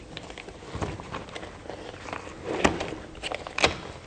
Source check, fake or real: real